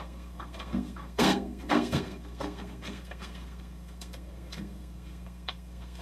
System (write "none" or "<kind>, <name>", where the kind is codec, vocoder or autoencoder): codec, SNAC